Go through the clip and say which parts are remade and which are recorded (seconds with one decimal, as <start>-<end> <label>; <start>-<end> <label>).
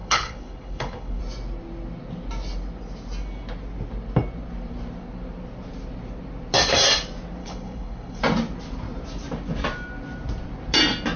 0.0-1.2 remade; 1.2-7.4 recorded; 7.4-8.2 remade; 8.2-11.2 recorded